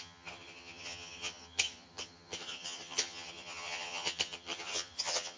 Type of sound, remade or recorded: remade